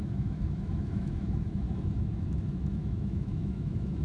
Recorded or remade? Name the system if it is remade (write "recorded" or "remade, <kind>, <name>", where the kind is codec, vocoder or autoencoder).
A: remade, autoencoder, DAC-VAE